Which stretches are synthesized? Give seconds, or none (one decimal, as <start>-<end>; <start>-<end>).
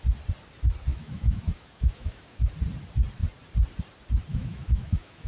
0.9-2.5; 4.3-5.3